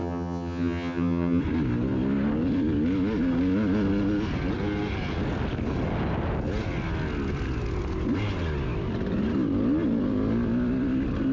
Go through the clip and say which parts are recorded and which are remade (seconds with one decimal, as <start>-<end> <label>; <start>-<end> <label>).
0.0-1.4 remade; 1.4-11.3 recorded